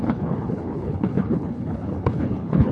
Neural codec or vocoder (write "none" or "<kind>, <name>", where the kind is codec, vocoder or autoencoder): codec, HILCodec